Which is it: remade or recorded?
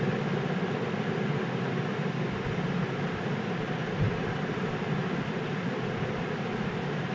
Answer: recorded